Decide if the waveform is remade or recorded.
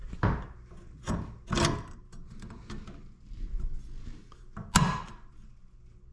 recorded